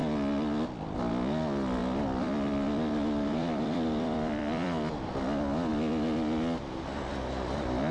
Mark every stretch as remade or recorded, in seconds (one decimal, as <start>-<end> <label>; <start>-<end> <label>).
0.0-1.8 recorded; 1.8-5.1 remade; 5.1-7.9 recorded